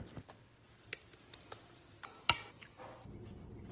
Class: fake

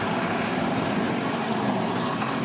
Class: fake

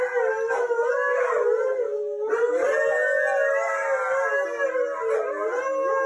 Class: real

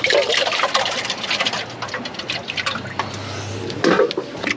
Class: real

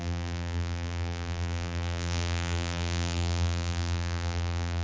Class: fake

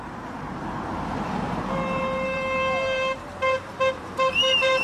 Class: fake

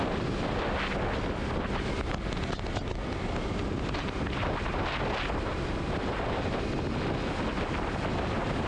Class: real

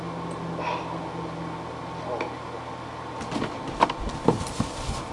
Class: real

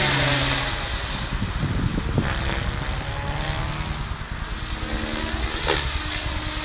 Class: real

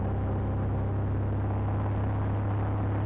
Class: real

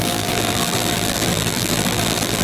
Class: fake